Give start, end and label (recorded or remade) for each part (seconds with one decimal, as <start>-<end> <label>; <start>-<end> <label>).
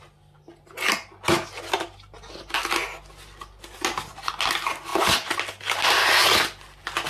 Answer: 0.0-7.1 recorded